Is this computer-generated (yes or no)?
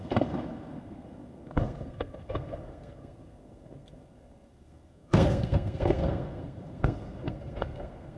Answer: yes